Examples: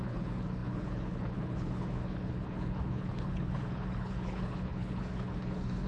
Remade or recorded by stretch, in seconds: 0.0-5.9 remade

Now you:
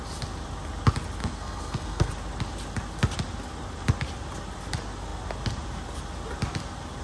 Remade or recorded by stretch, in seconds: 0.0-1.2 recorded; 1.2-2.1 remade; 2.1-7.0 recorded

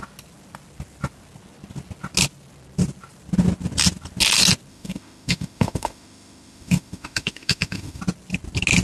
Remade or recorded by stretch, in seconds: 0.0-4.7 recorded; 4.7-8.0 remade; 8.0-8.8 recorded